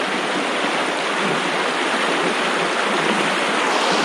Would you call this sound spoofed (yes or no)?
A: no